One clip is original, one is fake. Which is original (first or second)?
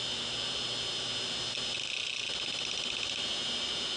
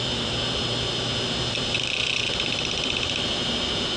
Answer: first